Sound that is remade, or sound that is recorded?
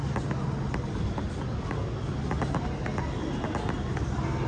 recorded